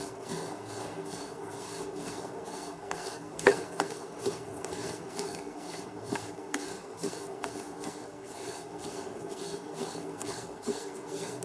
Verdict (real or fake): fake